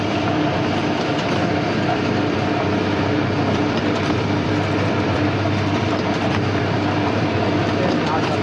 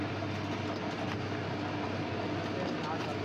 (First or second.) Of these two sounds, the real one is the second